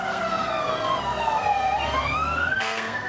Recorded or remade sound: remade